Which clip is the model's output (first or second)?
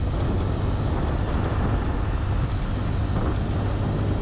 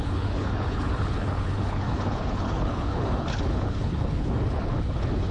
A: second